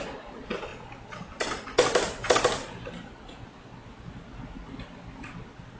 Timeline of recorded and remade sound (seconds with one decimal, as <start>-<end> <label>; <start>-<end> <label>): 0.0-5.8 recorded